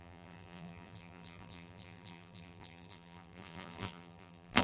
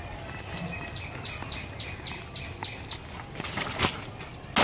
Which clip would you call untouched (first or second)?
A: second